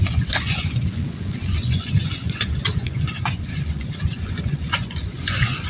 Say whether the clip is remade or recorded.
remade